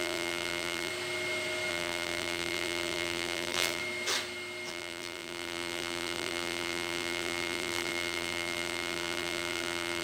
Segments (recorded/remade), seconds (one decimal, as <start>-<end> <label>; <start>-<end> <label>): 0.0-0.9 remade; 0.9-1.7 recorded; 1.7-3.8 remade; 3.8-4.7 recorded; 4.7-10.0 remade